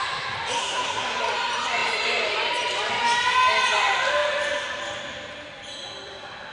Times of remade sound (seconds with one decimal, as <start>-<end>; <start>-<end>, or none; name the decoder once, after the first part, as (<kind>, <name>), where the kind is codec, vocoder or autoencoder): 0.6-1.2 (codec, SNAC)